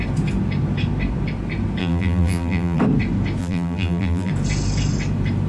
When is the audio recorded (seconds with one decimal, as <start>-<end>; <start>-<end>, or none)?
0.0-1.8; 2.8-3.4; 4.3-5.5